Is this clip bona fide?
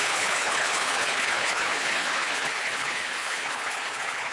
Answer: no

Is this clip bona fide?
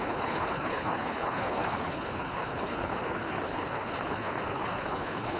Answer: no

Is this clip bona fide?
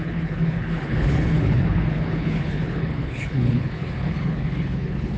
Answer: no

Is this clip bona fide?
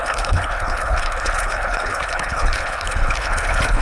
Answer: no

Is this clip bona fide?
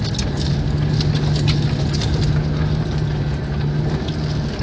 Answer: yes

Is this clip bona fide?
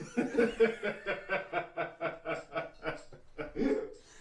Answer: yes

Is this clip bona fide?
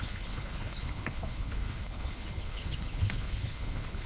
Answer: no